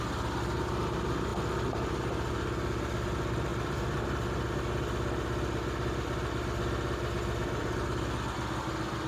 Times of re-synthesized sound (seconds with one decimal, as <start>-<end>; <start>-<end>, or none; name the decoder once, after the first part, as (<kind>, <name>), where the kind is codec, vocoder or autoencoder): none